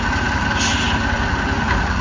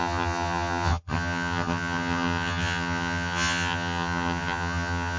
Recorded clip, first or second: first